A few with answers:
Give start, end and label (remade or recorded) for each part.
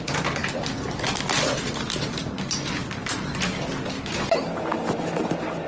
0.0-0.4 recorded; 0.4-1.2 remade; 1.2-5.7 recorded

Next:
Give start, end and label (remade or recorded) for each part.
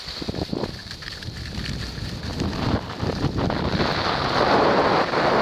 0.0-0.8 recorded; 0.8-4.0 remade; 4.0-5.4 recorded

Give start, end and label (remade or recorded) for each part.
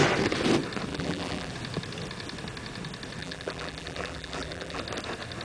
0.0-0.9 recorded; 0.9-1.5 remade; 1.5-3.2 recorded; 3.2-4.8 remade; 4.8-5.4 recorded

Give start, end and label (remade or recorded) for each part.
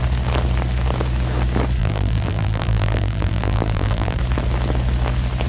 0.0-1.8 recorded; 1.8-4.2 remade; 4.2-5.5 recorded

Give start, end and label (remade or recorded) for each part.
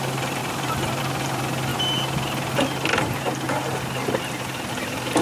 0.0-1.7 remade; 1.7-4.7 recorded; 4.7-5.2 remade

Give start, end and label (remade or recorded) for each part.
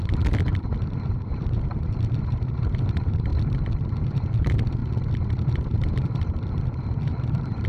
0.0-3.3 remade; 3.3-4.0 recorded; 4.0-4.8 remade; 4.8-5.3 recorded; 5.3-7.7 remade